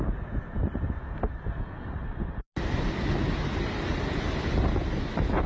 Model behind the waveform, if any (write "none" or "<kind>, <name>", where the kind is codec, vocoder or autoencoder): none